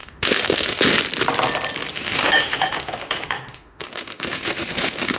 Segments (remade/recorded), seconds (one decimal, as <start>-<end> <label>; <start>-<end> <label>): 0.0-0.8 remade; 0.8-1.9 recorded; 1.9-5.2 remade